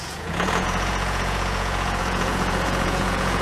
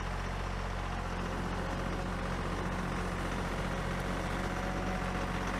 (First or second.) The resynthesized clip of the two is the first